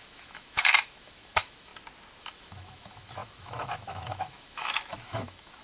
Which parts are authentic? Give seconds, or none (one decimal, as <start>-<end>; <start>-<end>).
1.7-2.2